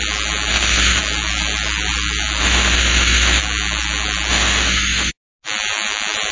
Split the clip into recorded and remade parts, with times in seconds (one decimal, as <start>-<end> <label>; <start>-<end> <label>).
0.0-0.5 recorded; 0.5-1.0 remade; 1.0-2.4 recorded; 2.4-3.4 remade; 3.4-4.3 recorded; 4.3-5.1 remade; 5.1-6.3 recorded

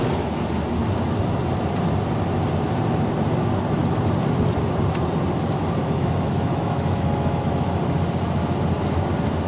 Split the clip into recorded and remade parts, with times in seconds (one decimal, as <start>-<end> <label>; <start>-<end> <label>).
0.0-5.8 recorded; 5.8-7.8 remade; 7.8-9.5 recorded

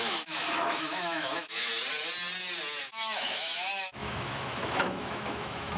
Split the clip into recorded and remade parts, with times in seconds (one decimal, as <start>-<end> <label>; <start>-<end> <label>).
0.0-1.7 remade; 1.7-2.8 recorded; 2.8-5.8 remade

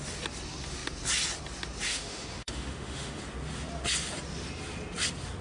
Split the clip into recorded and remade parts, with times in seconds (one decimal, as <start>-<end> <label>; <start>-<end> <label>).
0.0-1.9 recorded; 1.9-3.2 remade; 3.2-5.4 recorded

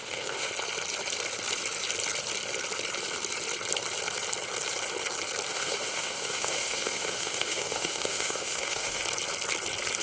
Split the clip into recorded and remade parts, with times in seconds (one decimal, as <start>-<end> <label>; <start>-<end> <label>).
0.0-0.5 remade; 0.5-5.5 recorded; 5.5-9.0 remade; 9.0-10.0 recorded